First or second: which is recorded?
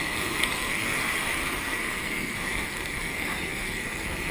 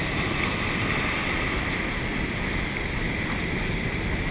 second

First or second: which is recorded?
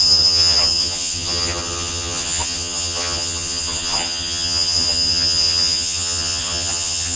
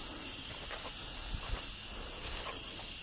second